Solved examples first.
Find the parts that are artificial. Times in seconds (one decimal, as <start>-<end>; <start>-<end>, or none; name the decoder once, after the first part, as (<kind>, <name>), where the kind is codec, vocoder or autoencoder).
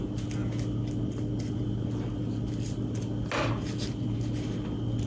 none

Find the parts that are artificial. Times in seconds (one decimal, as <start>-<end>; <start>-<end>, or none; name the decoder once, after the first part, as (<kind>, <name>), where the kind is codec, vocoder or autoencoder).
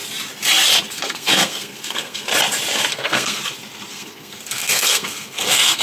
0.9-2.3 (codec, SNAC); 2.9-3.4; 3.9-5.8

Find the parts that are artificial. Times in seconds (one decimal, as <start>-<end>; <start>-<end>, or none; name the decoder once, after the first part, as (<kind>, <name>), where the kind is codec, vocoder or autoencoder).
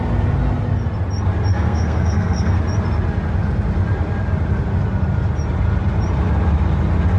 1.5-2.6 (codec, SNAC)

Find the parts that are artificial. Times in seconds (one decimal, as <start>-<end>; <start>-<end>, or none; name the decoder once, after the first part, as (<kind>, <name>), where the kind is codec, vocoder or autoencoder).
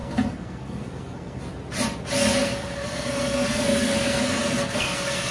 0.0-1.4 (codec, SNAC); 2.4-5.3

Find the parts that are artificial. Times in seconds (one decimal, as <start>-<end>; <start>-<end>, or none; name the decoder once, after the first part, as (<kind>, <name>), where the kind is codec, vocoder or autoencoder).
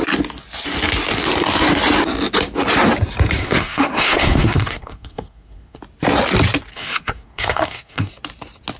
3.4-5.8 (codec, SNAC); 6.7-8.1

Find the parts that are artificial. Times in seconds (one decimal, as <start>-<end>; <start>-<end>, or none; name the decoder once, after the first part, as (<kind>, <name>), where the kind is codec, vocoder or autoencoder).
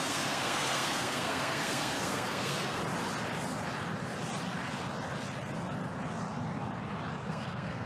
0.0-2.8 (codec, SNAC); 7.3-7.9